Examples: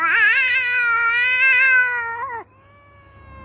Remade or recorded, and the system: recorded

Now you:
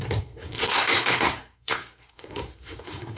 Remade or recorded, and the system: remade, codec, SNAC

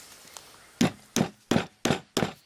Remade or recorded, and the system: recorded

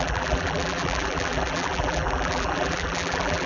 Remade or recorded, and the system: remade, vocoder, BigVGAN v2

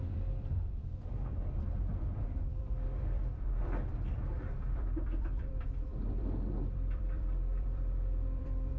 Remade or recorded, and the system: remade, vocoder, BigVGAN v2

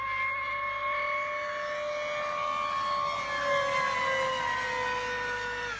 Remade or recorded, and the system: recorded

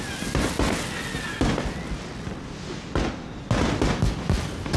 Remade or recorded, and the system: recorded